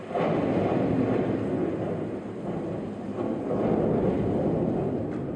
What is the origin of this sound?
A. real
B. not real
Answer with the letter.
A